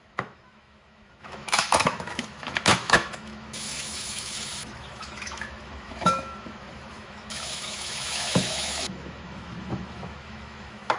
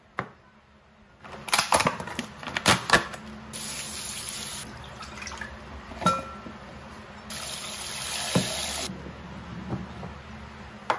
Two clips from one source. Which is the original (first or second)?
second